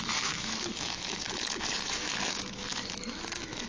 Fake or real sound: fake